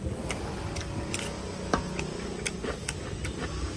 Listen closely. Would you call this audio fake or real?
real